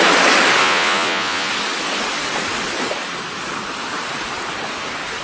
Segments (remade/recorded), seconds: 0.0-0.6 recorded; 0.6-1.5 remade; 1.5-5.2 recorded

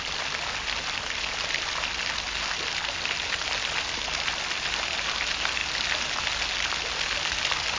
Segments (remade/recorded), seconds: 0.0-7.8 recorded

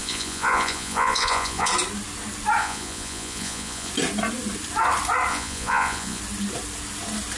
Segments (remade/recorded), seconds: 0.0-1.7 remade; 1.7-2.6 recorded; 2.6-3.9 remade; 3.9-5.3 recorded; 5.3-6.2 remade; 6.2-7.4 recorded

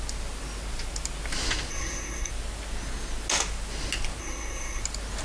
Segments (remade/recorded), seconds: 0.0-1.7 recorded; 1.7-2.3 remade; 2.3-4.2 recorded; 4.2-4.8 remade; 4.8-5.2 recorded

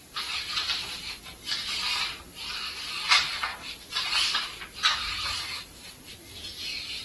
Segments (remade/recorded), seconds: 0.0-7.0 remade